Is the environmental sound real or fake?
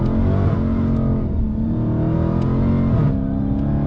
real